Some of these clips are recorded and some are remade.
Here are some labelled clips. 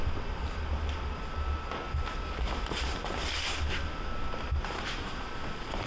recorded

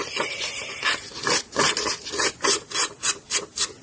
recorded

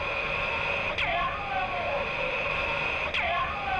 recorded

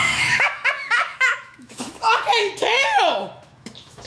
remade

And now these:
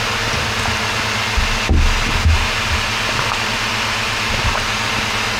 recorded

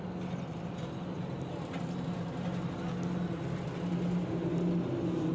recorded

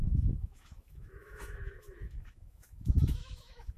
remade